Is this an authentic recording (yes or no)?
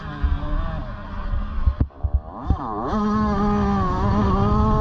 yes